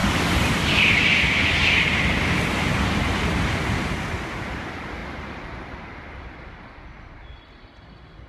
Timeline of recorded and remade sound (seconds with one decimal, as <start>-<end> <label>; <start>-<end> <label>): 0.0-8.3 recorded